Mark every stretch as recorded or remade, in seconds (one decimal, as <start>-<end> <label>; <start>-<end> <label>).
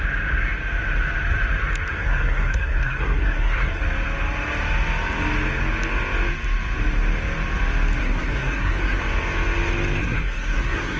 0.0-1.9 recorded; 1.9-3.8 remade; 3.8-8.0 recorded; 8.0-9.0 remade; 9.0-10.0 recorded; 10.0-11.0 remade